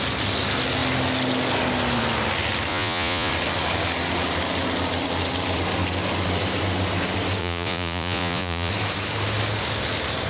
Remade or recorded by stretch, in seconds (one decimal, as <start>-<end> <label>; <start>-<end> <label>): 0.0-2.7 recorded; 2.7-3.3 remade; 3.3-7.4 recorded; 7.4-8.7 remade; 8.7-10.3 recorded